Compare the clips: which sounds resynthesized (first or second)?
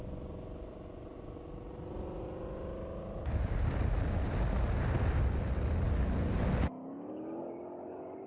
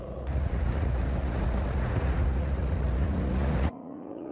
second